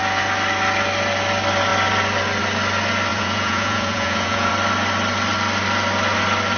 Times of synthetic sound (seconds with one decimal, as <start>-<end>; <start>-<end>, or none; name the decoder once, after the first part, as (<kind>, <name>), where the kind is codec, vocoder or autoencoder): 3.1-4.5 (vocoder, Vocos)